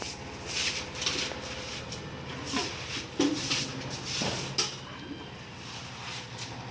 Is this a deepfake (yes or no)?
no